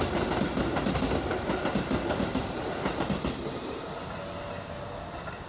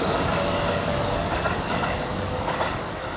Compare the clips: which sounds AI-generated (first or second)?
second